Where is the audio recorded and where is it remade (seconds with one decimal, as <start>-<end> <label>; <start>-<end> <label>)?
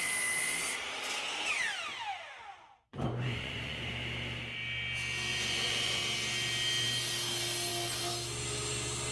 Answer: 0.0-2.5 recorded; 2.5-3.9 remade; 3.9-5.3 recorded; 5.3-6.0 remade; 6.0-9.1 recorded